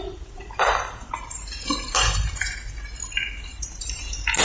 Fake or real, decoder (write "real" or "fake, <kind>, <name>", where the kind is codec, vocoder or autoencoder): fake, vocoder, BigVGAN v2